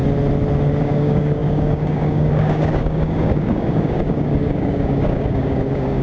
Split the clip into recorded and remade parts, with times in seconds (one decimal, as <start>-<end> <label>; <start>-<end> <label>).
0.0-0.8 recorded; 0.8-6.0 remade